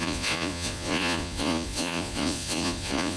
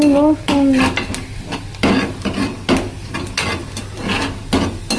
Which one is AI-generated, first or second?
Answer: first